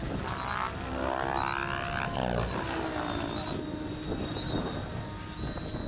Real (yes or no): yes